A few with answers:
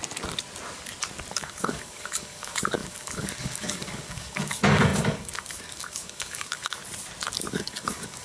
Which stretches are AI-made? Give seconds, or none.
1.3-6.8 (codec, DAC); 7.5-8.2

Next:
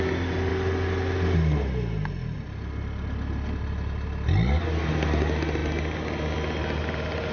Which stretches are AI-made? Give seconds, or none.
none